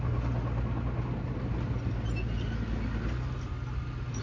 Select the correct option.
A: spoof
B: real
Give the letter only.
B